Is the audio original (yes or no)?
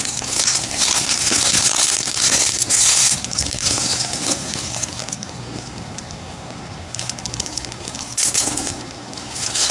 no